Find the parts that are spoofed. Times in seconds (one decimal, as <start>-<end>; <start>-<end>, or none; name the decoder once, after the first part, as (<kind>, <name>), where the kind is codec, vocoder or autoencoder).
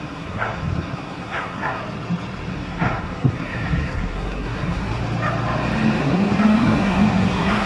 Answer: 0.0-1.8 (codec, SNAC); 2.5-5.0; 6.0-7.7